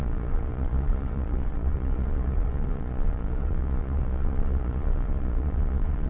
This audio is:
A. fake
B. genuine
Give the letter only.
A